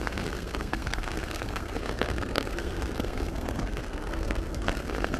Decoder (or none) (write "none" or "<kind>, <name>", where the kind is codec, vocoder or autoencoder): codec, SNAC